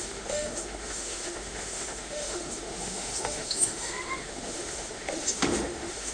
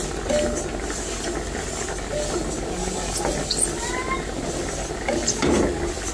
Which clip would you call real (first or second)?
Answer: second